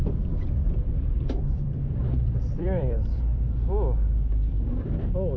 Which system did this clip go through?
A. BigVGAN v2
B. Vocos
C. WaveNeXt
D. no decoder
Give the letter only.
A